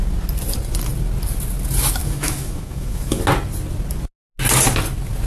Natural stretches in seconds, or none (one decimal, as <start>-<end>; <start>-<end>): 0.0-2.0; 3.2-5.3